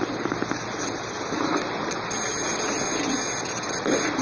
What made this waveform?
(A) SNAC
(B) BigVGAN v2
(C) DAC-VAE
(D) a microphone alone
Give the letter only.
D